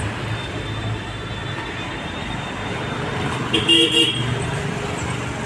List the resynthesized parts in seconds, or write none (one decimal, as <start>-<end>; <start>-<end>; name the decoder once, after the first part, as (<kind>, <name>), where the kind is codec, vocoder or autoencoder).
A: 1.4-4.7 (vocoder, BigVGAN v2)